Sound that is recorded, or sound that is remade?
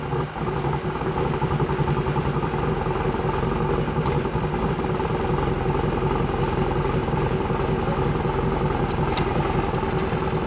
recorded